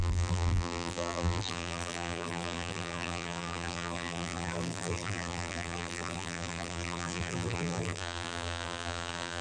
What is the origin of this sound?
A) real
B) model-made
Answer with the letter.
B